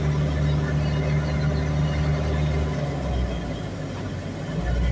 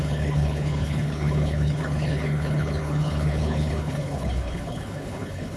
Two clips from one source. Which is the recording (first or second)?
first